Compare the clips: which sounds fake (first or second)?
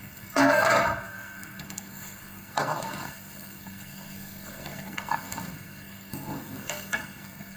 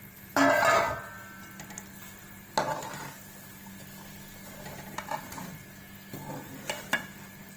first